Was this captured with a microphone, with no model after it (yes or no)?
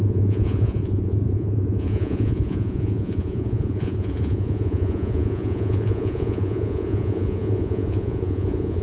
no